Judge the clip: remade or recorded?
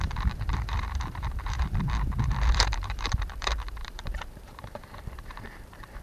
remade